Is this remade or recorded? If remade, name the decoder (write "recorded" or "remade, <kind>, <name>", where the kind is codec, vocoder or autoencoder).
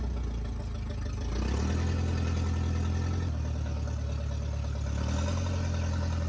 recorded